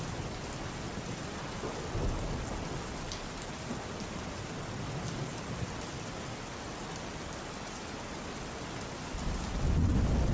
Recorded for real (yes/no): yes